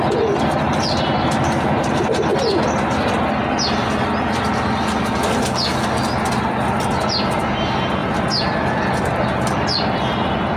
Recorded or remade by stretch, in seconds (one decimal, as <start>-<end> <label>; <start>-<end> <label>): 0.0-10.6 recorded